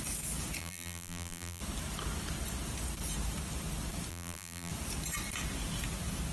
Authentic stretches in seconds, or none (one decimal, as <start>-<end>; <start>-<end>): 0.0-0.6; 1.6-4.1; 4.7-6.3